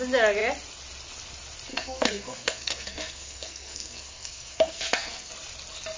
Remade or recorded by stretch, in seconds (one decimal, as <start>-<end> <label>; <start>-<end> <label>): 0.0-1.7 recorded; 1.7-5.3 remade; 5.3-6.0 recorded